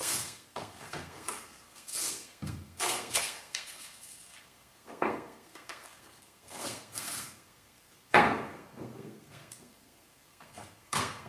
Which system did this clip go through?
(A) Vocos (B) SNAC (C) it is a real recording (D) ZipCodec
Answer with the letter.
B